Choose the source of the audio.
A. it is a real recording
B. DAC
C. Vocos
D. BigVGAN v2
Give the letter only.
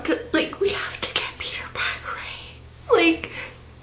B